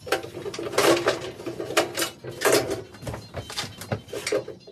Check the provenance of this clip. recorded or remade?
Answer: recorded